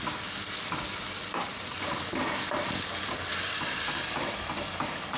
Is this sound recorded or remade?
recorded